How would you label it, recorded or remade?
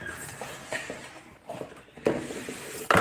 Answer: recorded